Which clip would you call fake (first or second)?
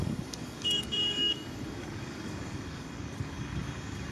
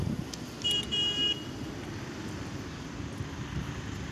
first